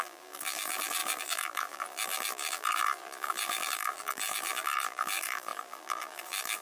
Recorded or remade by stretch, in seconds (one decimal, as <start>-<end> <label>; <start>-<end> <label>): 0.0-6.6 remade